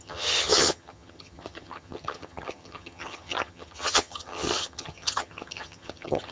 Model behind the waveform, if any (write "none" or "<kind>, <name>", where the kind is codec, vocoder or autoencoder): vocoder, HiFi-GAN